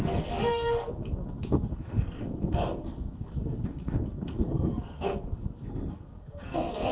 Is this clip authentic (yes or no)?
no